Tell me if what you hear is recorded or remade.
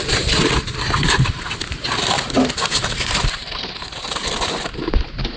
recorded